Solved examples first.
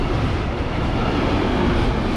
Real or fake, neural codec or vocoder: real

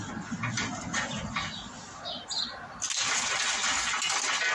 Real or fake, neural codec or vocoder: real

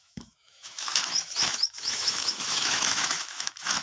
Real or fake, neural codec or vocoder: fake, autoencoder, DAC-VAE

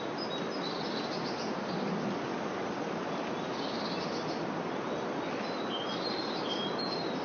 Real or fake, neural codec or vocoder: real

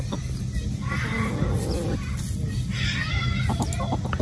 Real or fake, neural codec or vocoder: real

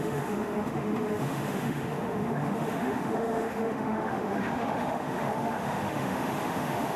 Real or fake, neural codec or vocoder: fake, autoencoder, DAC-VAE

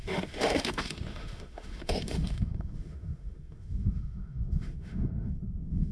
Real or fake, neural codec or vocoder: fake, autoencoder, DAC-VAE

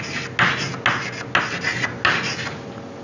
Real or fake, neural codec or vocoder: real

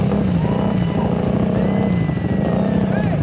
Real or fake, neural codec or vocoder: real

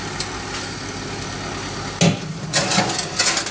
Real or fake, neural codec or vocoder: real